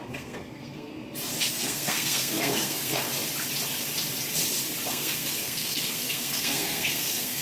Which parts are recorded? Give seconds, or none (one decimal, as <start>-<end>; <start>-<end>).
0.9-1.5; 3.1-4.9